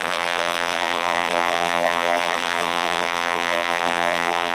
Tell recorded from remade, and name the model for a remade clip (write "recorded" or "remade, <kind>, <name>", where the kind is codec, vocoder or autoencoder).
remade, vocoder, BigVGAN v2